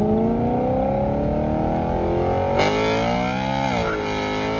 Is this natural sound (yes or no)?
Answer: yes